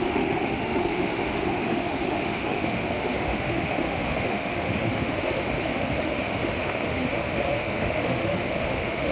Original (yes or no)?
no